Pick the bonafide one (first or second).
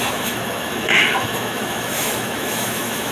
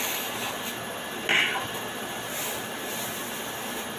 second